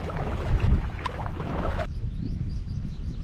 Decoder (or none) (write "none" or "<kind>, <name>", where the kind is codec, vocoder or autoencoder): autoencoder, DAC-VAE